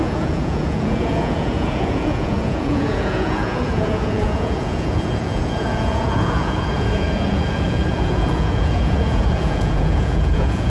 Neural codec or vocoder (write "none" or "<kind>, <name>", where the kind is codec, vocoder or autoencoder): vocoder, Vocos